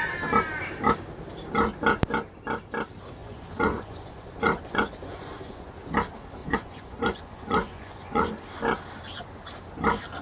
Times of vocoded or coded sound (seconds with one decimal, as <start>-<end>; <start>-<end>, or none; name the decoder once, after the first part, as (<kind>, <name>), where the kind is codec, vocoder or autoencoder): 3.2-5.7 (vocoder, Vocos); 6.4-8.3

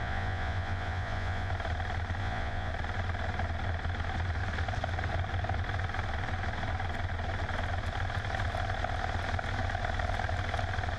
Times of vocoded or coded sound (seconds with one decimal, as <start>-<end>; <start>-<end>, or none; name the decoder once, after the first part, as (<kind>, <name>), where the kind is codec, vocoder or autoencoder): 0.0-1.5 (vocoder, Vocos); 2.2-2.7

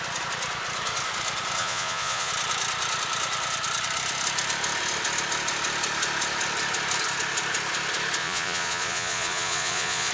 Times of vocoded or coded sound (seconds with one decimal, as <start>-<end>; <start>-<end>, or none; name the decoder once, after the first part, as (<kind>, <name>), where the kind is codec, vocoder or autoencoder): 1.6-2.3 (vocoder, Vocos); 8.2-10.1

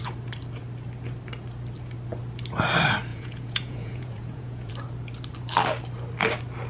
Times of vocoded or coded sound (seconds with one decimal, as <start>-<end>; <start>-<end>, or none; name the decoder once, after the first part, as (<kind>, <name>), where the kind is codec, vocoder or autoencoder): 3.1-4.7 (vocoder, Vocos)

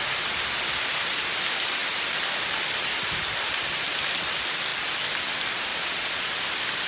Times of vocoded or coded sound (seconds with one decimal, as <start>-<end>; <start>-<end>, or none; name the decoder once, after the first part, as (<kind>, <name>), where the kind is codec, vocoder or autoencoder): 5.7-6.3 (vocoder, Vocos)

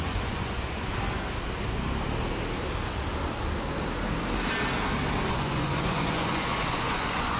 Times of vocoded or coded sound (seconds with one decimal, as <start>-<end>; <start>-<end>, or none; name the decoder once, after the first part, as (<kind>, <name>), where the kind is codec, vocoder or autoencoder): 0.0-0.9 (vocoder, Vocos); 5.3-7.4

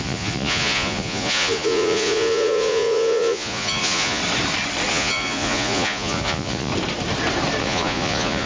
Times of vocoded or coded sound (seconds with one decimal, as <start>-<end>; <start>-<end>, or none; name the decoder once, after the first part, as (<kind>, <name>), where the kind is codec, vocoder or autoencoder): 0.0-4.2 (vocoder, Vocos); 4.9-6.7; 7.6-8.5

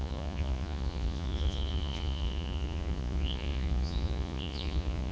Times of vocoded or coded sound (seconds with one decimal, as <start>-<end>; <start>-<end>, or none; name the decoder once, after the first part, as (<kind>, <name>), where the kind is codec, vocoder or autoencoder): 0.0-5.1 (vocoder, Vocos)